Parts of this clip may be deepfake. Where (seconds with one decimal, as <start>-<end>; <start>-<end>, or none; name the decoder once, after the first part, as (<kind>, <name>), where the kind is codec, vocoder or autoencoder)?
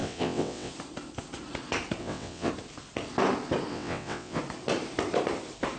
0.0-0.7 (vocoder, WaveNeXt); 2.0-2.5; 3.7-4.4